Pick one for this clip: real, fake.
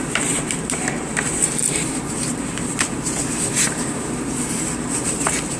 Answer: fake